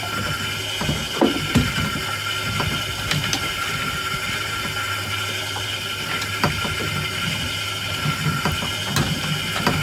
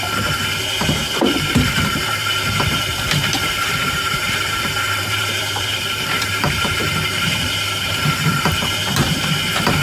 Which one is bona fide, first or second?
first